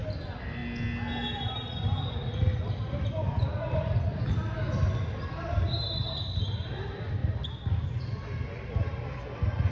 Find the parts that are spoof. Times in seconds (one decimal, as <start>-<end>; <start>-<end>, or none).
none